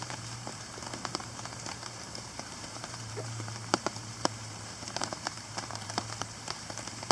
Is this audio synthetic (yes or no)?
yes